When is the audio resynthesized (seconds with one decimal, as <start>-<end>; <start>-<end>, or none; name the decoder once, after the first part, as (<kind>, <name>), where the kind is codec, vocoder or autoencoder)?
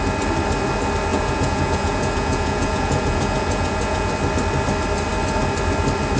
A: 1.1-4.1 (vocoder, Vocos)